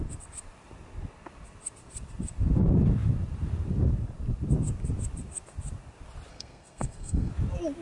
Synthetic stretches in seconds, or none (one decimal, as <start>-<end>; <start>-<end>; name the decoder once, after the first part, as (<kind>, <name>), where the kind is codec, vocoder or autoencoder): 6.3-7.3 (codec, SNAC)